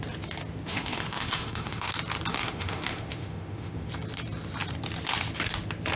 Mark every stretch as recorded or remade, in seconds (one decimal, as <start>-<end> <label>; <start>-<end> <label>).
0.0-0.6 recorded; 0.6-1.9 remade; 1.9-2.3 recorded; 2.3-3.9 remade; 3.9-6.0 recorded